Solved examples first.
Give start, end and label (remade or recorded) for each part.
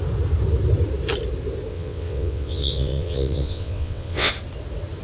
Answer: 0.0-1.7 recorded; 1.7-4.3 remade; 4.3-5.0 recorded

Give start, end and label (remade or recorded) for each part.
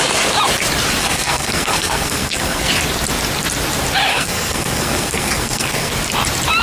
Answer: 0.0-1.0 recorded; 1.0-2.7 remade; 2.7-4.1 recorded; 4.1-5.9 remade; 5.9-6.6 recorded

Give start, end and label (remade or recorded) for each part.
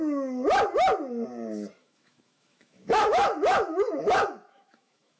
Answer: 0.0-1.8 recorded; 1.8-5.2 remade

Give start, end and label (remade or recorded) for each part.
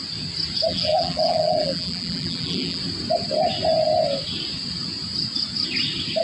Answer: 0.0-0.7 recorded; 0.7-2.8 remade; 2.8-6.2 recorded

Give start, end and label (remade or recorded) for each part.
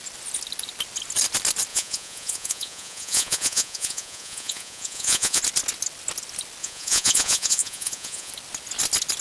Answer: 0.0-1.7 recorded; 1.7-5.4 remade; 5.4-6.6 recorded; 6.6-8.3 remade; 8.3-9.2 recorded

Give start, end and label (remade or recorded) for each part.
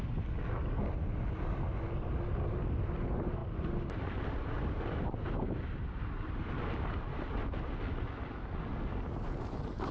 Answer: 0.0-3.4 recorded; 3.4-7.6 remade; 7.6-9.9 recorded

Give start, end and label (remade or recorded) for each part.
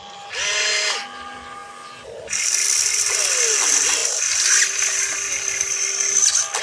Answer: 0.0-6.6 recorded